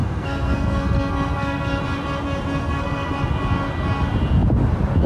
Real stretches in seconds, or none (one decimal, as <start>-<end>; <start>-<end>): 1.8-2.6; 3.1-5.1